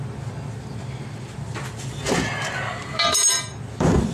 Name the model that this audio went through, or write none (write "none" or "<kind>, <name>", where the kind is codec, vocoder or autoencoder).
none